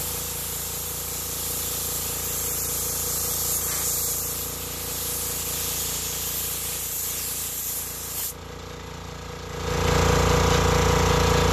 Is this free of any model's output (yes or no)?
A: yes